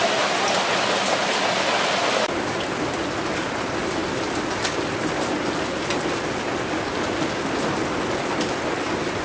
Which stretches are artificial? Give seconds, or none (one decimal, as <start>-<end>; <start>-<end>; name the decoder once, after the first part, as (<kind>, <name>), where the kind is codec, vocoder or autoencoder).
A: none